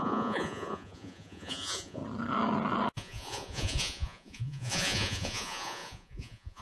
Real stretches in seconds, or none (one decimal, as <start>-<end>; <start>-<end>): 2.0-2.9